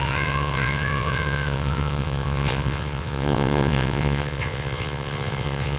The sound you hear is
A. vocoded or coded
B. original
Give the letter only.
A